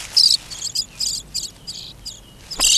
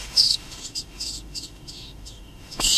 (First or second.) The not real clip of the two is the second